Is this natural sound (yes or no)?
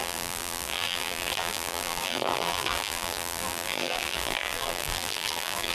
no